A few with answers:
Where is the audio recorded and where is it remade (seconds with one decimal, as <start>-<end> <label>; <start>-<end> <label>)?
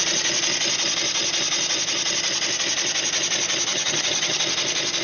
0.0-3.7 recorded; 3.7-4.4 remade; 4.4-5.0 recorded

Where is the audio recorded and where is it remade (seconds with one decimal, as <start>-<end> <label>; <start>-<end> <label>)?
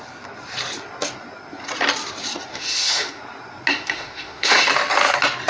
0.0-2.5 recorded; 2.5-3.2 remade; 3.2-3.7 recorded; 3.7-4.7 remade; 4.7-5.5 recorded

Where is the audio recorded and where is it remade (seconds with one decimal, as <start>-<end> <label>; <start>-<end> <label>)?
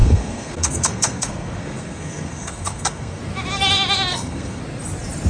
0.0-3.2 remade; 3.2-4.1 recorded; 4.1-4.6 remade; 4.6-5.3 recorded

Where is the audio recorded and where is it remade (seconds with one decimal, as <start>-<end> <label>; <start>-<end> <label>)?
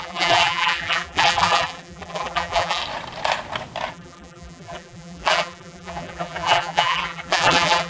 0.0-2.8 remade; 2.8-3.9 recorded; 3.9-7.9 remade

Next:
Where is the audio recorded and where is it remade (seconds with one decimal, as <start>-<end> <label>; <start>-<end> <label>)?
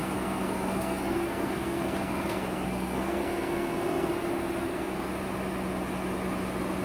0.0-4.1 remade; 4.1-4.6 recorded; 4.6-5.1 remade; 5.1-6.8 recorded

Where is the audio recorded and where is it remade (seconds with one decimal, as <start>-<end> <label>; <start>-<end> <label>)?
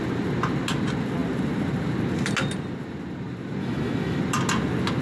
0.0-3.6 recorded; 3.6-4.2 remade; 4.2-5.0 recorded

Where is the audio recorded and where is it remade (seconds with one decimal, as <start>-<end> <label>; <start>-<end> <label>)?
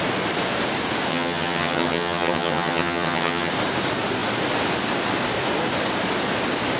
0.0-1.1 recorded; 1.1-3.5 remade; 3.5-6.8 recorded